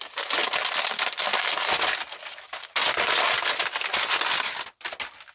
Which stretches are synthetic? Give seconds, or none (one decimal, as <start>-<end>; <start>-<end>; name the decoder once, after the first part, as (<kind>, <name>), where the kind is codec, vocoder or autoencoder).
none